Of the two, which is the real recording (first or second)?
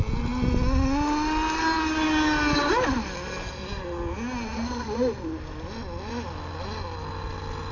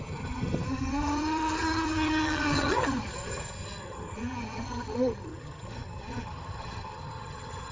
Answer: first